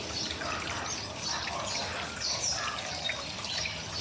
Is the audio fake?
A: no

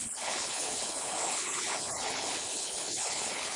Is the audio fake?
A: yes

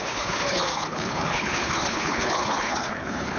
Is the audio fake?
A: yes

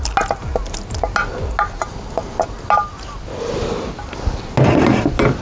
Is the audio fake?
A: no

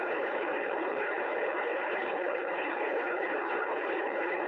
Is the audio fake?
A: yes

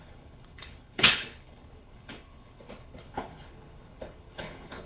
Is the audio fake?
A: yes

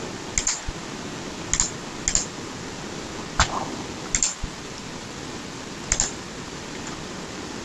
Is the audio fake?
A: no